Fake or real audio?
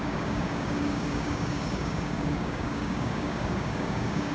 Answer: fake